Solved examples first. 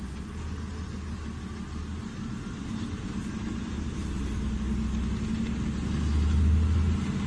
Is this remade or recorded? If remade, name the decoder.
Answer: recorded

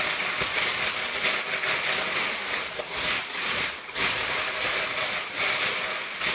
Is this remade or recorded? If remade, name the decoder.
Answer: recorded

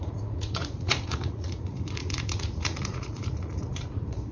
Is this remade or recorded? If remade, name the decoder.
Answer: remade, vocoder, Vocos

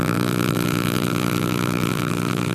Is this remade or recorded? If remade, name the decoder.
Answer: remade, vocoder, BigVGAN v2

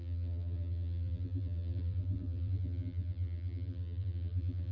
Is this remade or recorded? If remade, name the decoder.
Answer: remade, vocoder, BigVGAN v2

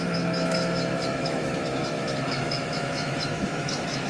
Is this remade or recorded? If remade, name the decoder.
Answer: remade, autoencoder, DAC-VAE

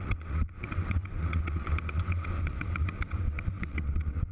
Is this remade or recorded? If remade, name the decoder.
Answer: remade, vocoder, WaveNeXt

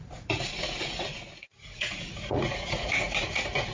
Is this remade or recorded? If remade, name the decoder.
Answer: remade, vocoder, Vocos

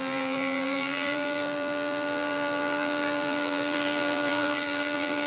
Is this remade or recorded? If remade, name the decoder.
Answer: remade, vocoder, BigVGAN v2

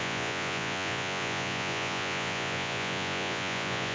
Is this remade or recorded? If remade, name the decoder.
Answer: remade, vocoder, Vocos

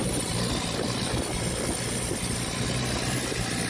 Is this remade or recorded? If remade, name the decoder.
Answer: recorded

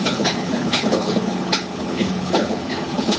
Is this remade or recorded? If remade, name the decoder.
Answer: remade, codec, HILCodec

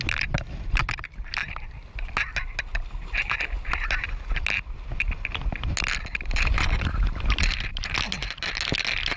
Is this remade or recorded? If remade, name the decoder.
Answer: recorded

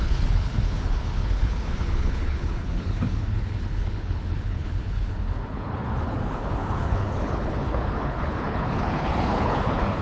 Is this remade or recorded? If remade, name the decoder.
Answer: remade, codec, HILCodec